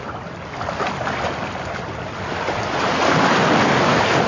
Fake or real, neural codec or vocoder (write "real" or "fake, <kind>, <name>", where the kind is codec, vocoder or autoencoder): real